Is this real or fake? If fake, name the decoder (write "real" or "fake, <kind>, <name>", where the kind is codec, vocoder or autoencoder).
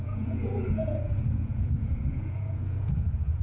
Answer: fake, vocoder, Vocos